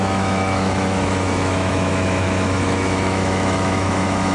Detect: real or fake fake